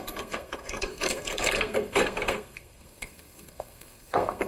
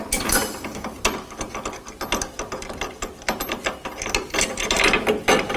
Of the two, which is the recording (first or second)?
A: second